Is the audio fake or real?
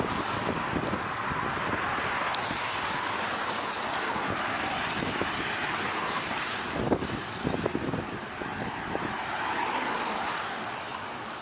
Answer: real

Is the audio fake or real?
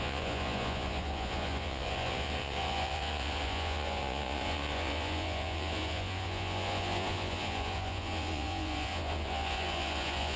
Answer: fake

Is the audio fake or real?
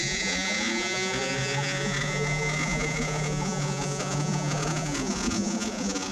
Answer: fake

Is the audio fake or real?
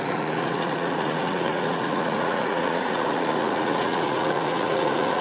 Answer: fake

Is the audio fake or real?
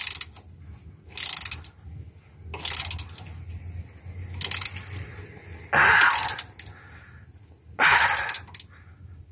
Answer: real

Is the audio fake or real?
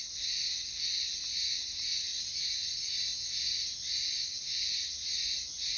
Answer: real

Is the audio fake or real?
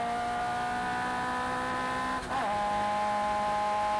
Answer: real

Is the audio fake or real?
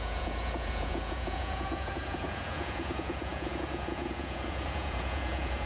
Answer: fake